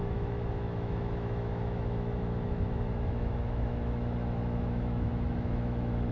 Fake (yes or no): yes